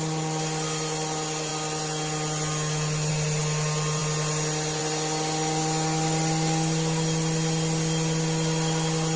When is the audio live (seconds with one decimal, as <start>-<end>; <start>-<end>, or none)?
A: 0.0-9.2